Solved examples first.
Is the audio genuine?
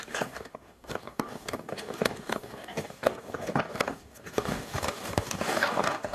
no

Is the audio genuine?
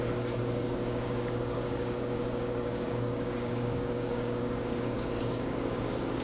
no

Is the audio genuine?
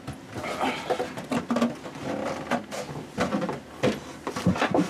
yes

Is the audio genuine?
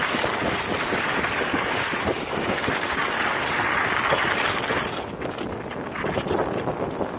yes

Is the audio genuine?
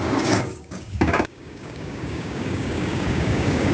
no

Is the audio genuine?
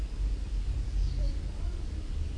no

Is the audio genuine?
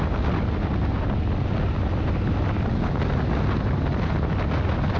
yes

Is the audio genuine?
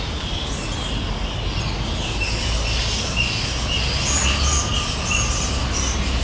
yes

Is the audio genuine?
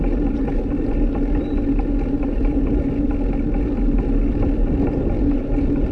yes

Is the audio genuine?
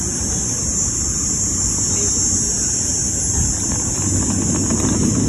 yes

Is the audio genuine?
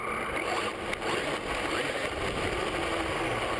yes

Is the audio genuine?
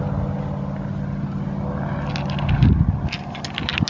yes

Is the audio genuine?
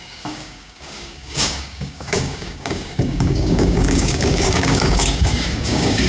no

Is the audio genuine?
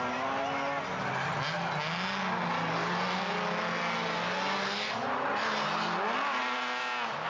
yes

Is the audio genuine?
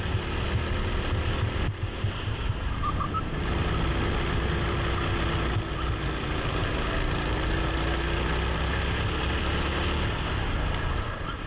yes